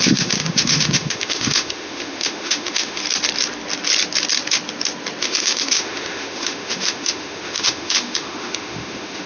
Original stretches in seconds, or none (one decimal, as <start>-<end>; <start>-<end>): 3.0-5.2

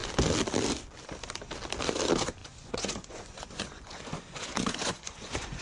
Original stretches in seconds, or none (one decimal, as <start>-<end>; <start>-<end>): 0.0-2.4